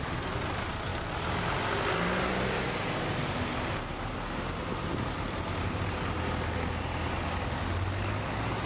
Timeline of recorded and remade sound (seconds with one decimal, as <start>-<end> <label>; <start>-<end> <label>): 0.0-8.7 recorded